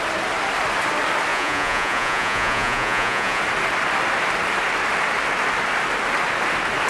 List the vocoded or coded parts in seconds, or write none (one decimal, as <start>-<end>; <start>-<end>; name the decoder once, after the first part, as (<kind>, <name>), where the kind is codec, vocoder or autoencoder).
1.3-3.4 (vocoder, Vocos)